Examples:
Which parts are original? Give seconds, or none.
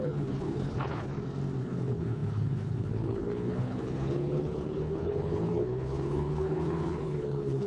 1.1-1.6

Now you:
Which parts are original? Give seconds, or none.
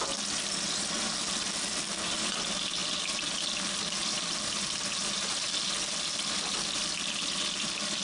0.0-8.0